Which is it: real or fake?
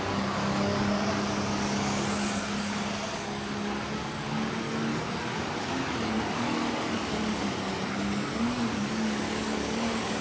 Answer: fake